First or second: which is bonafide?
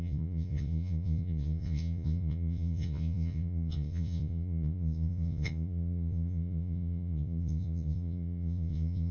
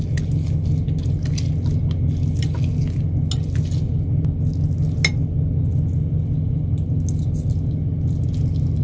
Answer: second